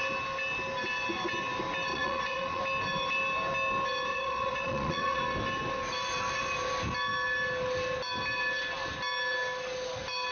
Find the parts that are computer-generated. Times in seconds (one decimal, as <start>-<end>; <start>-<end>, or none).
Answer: 1.9-2.6; 4.1-5.2